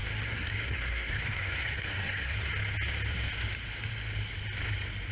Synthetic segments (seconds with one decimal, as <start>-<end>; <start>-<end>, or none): 0.0-2.5